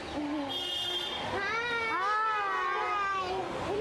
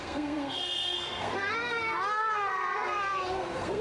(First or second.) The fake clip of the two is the second